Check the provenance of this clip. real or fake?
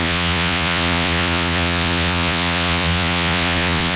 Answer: fake